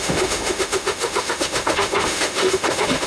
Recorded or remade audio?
remade